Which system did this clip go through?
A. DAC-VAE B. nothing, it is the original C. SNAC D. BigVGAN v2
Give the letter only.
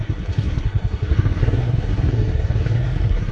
C